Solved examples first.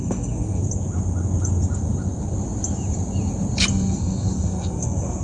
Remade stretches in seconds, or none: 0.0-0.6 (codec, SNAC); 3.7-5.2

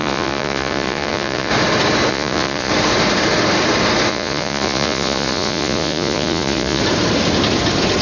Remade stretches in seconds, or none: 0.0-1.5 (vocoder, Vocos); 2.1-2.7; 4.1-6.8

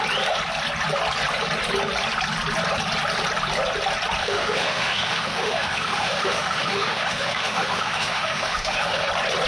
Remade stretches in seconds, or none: 4.2-9.1 (autoencoder, DAC-VAE)

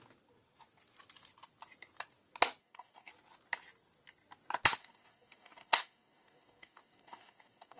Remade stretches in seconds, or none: 2.6-3.1 (codec, DAC); 4.8-7.8

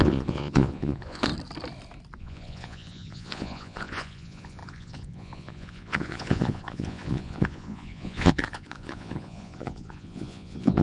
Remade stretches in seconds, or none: 0.0-1.3 (vocoder, Vocos); 2.2-10.8

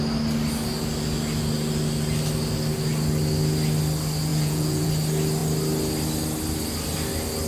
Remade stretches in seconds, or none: 4.3-4.9 (vocoder, Vocos)